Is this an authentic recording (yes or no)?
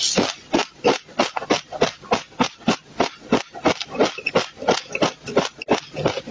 yes